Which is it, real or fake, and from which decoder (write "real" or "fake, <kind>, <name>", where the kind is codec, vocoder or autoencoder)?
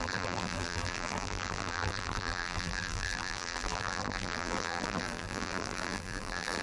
fake, vocoder, BigVGAN v2